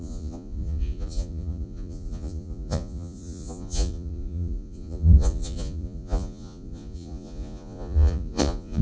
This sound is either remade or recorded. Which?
remade